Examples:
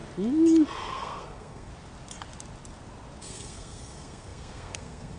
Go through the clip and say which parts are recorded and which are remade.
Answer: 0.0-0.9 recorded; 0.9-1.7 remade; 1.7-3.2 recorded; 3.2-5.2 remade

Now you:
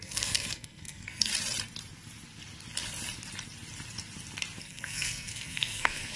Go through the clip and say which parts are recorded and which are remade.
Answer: 0.0-1.3 remade; 1.3-4.6 recorded; 4.6-6.2 remade

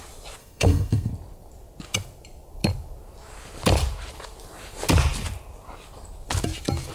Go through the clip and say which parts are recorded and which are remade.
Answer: 0.0-0.4 recorded; 0.4-1.1 remade; 1.1-6.9 recorded

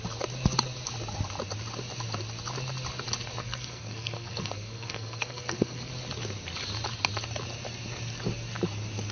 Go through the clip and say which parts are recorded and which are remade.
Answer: 0.0-3.4 recorded; 3.4-5.9 remade; 5.9-9.1 recorded

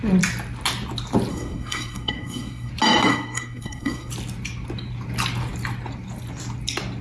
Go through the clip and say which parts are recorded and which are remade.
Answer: 0.0-1.3 recorded; 1.3-2.7 remade; 2.7-3.1 recorded; 3.1-4.1 remade; 4.1-7.0 recorded

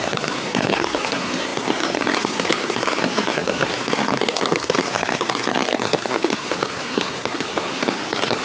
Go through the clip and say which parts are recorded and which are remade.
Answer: 0.0-8.4 remade